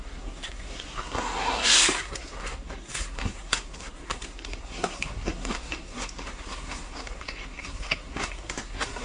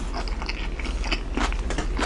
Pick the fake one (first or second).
first